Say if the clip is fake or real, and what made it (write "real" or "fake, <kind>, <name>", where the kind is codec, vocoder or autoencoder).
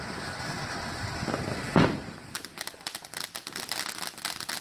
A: real